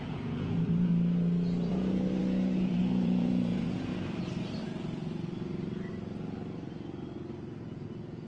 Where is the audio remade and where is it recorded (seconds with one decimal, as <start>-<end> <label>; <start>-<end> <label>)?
0.0-0.9 remade; 0.9-1.7 recorded; 1.7-3.9 remade; 3.9-7.6 recorded; 7.6-8.3 remade